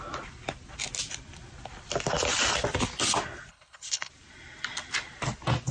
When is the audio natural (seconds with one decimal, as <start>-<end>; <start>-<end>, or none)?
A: 0.0-3.5; 4.1-5.7